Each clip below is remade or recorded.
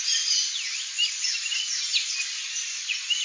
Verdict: recorded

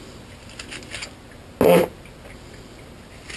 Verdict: recorded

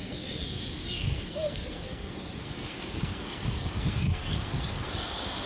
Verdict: remade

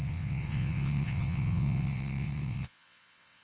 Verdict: remade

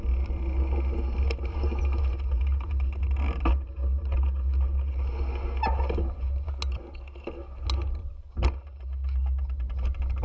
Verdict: recorded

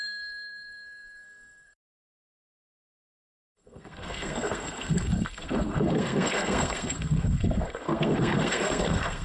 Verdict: remade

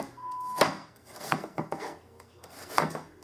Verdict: remade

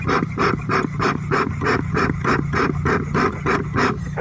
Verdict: recorded